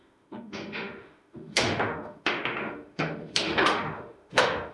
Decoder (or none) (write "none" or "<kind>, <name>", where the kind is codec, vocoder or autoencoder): autoencoder, DAC-VAE